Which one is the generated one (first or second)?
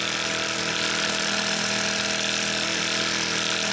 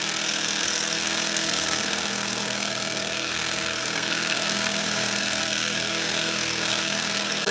second